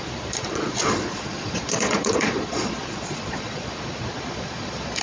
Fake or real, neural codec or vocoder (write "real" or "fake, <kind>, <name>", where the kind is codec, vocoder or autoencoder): fake, vocoder, Vocos